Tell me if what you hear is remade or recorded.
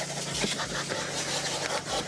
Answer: recorded